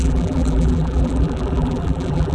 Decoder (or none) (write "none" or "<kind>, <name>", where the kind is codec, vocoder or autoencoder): vocoder, BigVGAN v2